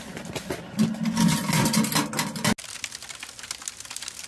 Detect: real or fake real